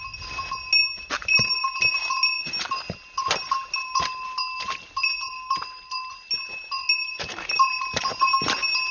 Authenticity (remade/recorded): recorded